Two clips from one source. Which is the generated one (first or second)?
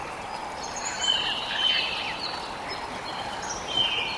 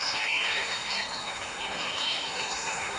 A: second